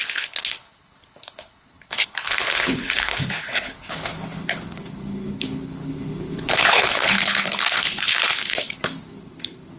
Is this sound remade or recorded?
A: remade